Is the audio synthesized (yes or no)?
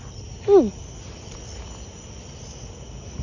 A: no